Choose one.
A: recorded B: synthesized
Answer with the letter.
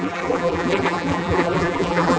B